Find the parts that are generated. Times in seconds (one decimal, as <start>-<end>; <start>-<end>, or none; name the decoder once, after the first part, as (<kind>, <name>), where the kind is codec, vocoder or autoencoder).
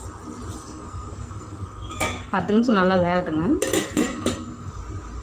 0.6-3.2 (codec, SNAC); 3.8-4.8